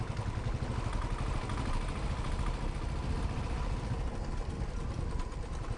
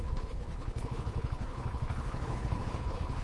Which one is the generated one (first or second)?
second